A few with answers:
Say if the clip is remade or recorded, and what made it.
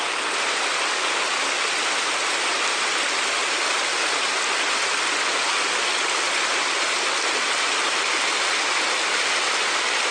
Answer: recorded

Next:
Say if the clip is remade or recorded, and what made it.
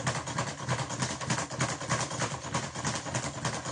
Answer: recorded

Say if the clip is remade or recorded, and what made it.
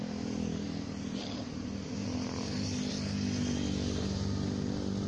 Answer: recorded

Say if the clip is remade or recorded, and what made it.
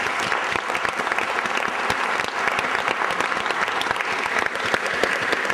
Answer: recorded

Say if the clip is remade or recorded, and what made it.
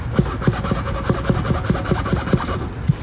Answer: recorded